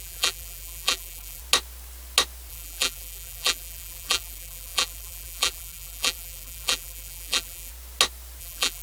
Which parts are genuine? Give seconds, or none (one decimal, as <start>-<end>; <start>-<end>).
1.4-2.5; 7.7-8.4

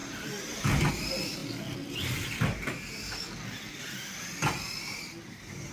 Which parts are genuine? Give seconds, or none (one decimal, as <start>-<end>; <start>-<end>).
0.0-5.7

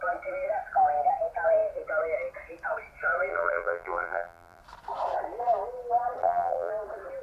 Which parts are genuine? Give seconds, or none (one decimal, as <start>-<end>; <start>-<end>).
0.0-3.3; 4.6-6.2; 6.7-7.2

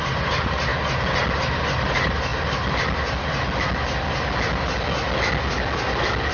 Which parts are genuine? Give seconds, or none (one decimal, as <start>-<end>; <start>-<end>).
0.7-1.4; 2.3-6.3

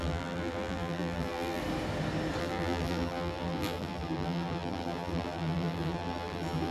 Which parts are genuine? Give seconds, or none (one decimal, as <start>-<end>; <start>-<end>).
1.6-2.4

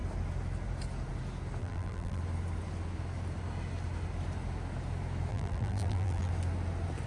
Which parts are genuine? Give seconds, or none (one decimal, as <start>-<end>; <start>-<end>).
0.0-1.6; 2.2-5.3; 6.3-7.1

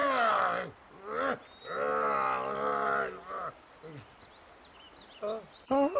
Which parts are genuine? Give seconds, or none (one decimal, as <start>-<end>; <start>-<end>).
0.0-6.0